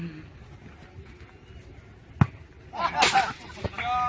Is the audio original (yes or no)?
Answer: yes